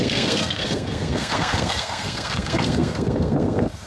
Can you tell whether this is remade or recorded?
remade